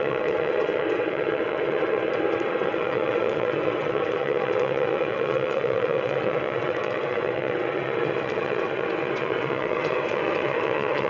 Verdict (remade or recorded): remade